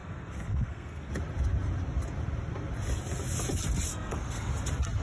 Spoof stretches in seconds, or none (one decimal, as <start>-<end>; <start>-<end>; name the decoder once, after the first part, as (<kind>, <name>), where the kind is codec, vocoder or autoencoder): 0.0-1.1 (codec, SNAC); 3.9-4.5